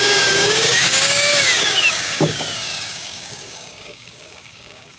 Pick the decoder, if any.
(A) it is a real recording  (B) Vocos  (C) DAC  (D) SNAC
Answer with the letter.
C